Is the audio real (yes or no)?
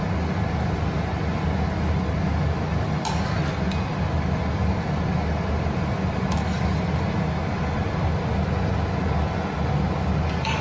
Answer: yes